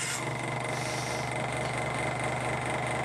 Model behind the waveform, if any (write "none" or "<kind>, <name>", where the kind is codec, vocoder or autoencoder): none